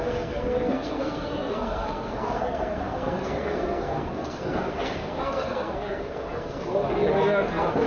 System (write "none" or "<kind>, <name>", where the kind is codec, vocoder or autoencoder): codec, SNAC